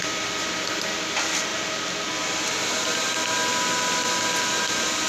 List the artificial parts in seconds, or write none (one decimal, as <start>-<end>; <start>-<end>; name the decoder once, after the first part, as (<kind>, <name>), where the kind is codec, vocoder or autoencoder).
none